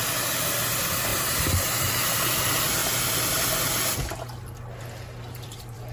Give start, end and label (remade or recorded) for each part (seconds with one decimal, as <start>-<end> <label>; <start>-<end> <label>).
0.0-2.8 remade; 2.8-4.8 recorded; 4.8-5.9 remade